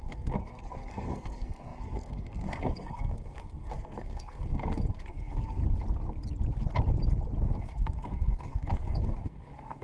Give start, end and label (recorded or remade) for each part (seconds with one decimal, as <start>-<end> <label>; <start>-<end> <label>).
0.0-5.6 remade; 5.6-7.6 recorded; 7.6-9.8 remade